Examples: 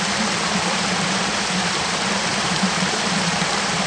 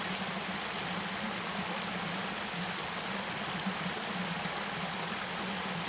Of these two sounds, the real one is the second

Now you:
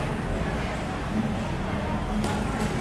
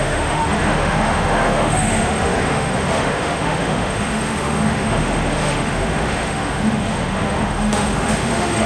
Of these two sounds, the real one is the first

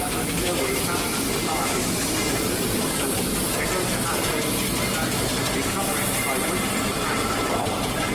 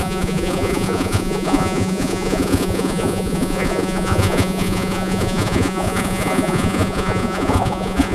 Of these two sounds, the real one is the first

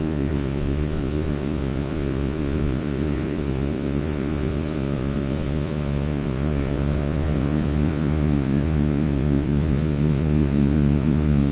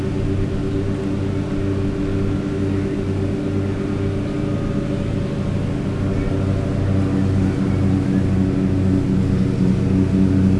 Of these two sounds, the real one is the second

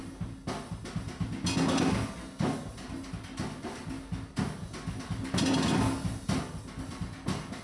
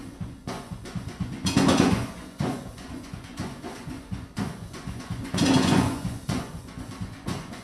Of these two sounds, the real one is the first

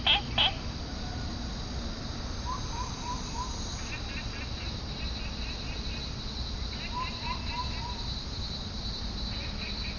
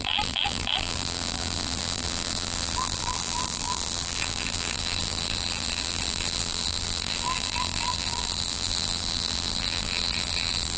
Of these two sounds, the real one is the first